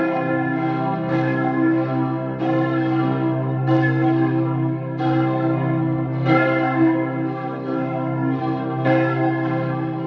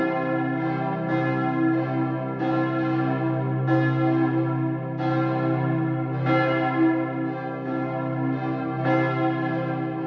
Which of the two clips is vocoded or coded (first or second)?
first